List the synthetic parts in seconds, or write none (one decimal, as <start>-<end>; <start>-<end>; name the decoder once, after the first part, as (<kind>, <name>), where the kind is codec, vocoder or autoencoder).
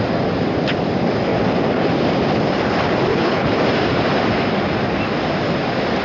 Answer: 3.1-3.6 (codec, HILCodec)